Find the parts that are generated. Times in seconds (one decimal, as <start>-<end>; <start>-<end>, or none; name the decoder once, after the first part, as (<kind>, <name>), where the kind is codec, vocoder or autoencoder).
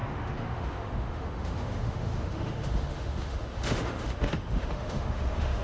0.0-5.6 (autoencoder, DAC-VAE)